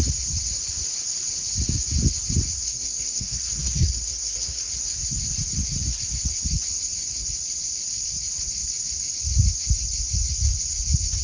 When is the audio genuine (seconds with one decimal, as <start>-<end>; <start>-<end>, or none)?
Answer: 0.0-2.6; 4.7-11.2